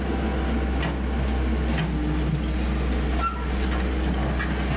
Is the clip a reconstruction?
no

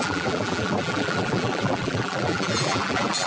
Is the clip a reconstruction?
yes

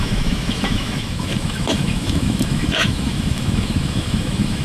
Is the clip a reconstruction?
yes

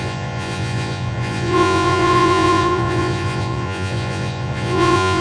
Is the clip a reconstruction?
yes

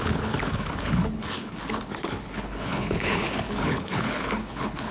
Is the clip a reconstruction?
yes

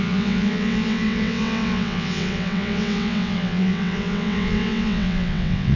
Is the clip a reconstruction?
yes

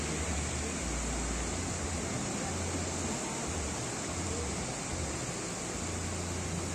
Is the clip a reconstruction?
no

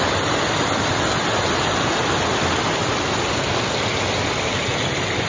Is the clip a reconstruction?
no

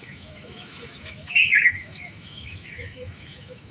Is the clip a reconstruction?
yes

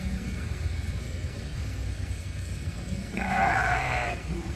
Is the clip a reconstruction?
yes